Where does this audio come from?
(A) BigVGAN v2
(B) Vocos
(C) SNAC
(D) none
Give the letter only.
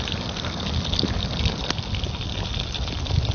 D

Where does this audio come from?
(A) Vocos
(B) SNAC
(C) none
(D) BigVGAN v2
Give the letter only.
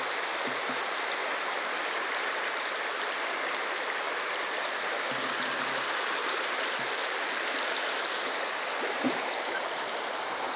C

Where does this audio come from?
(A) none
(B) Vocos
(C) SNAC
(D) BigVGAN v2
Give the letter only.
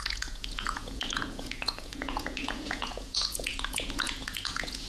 B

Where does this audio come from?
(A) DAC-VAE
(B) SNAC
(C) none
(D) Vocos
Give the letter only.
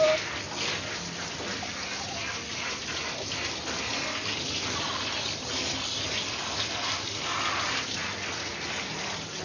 C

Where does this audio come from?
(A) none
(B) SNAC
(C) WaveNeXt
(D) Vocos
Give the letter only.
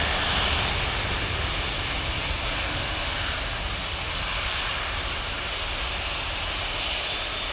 A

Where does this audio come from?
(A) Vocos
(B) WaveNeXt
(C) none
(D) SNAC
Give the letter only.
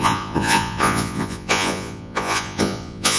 A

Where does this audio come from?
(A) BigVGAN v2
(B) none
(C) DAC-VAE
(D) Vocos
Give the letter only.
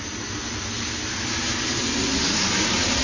B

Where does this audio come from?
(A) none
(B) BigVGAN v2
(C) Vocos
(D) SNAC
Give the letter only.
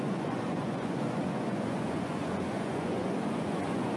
C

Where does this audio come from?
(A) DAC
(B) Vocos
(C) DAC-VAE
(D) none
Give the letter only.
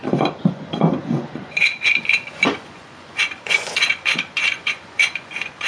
B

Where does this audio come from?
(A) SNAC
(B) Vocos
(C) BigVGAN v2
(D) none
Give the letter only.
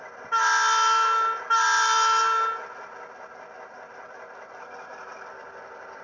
D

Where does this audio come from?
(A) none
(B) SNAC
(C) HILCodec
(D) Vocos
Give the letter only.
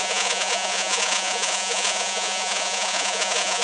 D